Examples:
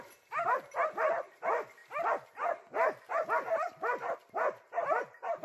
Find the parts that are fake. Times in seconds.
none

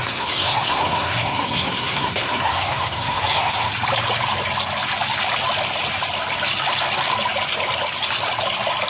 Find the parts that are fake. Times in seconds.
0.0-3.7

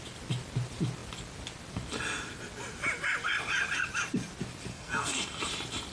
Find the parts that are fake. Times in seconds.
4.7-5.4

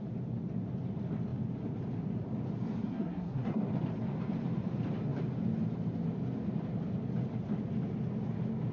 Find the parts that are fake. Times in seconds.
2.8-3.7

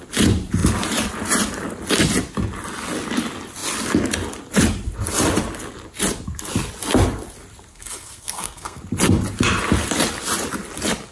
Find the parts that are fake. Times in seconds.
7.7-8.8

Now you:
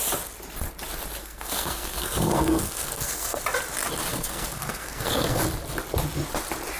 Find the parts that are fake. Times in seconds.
1.2-3.4; 4.1-5.4

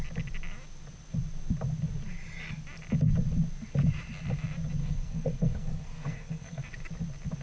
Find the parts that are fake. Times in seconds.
4.8-6.6

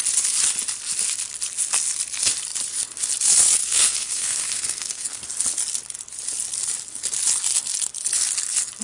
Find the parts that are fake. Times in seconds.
3.6-5.2